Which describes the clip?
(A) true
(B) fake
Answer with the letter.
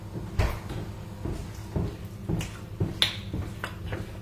A